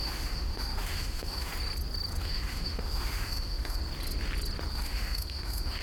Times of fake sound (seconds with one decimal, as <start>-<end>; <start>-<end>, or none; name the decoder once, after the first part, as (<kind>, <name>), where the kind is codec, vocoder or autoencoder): 0.0-1.5 (autoencoder, DAC-VAE); 2.2-3.8; 4.7-5.8